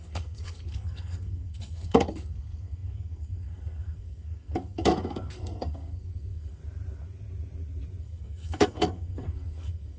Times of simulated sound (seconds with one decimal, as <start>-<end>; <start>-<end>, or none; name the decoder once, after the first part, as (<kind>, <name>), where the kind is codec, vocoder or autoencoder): 0.0-6.6 (codec, SNAC); 8.0-10.0